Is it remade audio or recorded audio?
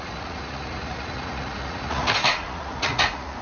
remade